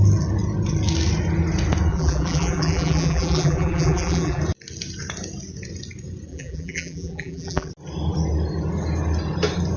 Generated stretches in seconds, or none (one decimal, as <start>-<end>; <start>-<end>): 1.9-4.4; 6.3-7.7